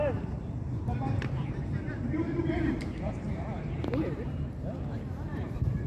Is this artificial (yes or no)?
yes